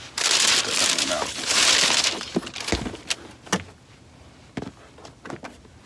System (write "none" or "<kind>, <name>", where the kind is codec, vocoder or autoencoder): none